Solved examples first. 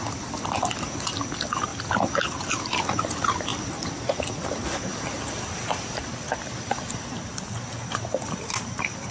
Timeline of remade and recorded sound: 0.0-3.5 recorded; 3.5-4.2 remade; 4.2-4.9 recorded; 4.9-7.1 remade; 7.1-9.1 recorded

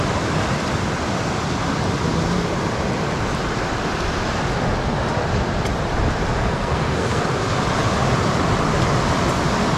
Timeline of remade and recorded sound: 0.0-6.4 recorded; 6.4-7.3 remade; 7.3-9.8 recorded

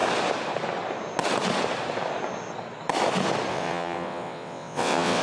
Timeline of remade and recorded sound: 0.0-3.5 recorded; 3.5-5.2 remade

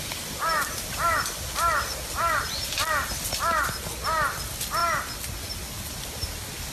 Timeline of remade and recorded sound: 0.0-6.7 recorded